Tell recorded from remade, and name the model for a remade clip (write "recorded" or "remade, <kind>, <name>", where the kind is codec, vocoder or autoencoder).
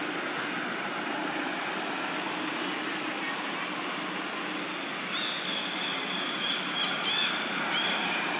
recorded